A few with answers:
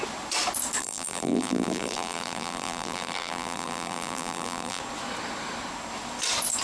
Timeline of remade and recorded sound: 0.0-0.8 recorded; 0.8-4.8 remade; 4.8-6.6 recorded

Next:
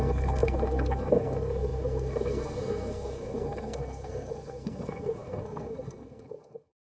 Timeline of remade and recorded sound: 0.0-6.9 remade

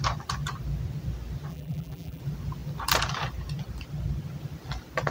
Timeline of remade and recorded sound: 0.0-1.5 recorded; 1.5-2.2 remade; 2.2-5.1 recorded